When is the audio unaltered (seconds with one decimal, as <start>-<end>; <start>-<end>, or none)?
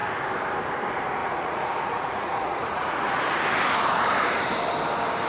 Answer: 0.0-1.2; 3.2-5.3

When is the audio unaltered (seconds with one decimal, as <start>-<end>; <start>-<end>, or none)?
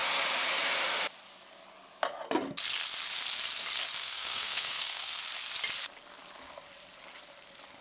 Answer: 0.0-4.0; 5.2-7.8